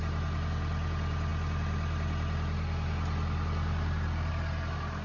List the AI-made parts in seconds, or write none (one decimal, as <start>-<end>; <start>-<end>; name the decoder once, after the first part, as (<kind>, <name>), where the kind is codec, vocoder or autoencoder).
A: none